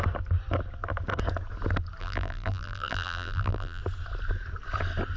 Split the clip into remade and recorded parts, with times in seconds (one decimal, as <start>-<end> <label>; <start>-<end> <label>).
0.0-2.0 recorded; 2.0-3.8 remade; 3.8-5.2 recorded